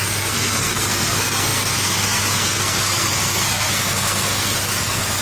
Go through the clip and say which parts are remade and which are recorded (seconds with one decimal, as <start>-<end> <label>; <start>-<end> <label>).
0.0-5.2 remade